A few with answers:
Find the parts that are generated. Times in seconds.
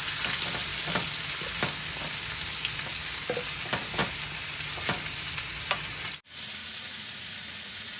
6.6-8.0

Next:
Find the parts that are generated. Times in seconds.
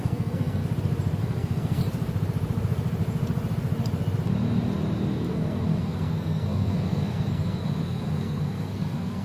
0.0-0.6; 1.2-1.8; 5.2-9.2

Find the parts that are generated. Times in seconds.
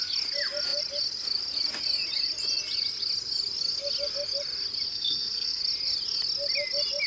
4.9-5.6